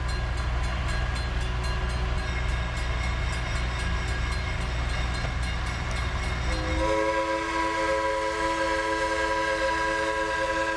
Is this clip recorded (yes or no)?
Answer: yes